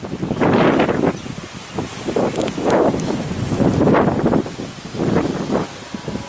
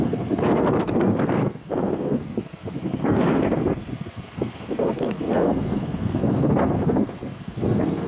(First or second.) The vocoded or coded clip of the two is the second